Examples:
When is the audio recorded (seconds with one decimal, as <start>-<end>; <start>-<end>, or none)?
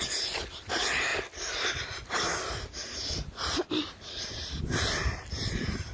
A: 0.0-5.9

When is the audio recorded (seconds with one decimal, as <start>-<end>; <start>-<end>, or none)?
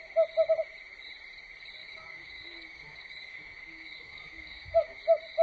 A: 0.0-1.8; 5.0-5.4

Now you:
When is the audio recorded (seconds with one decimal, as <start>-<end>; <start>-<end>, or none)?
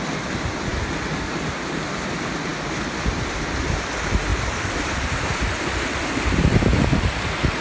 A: 0.0-7.6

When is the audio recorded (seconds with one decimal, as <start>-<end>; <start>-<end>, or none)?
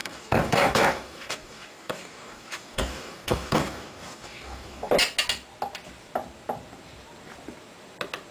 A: 4.9-8.3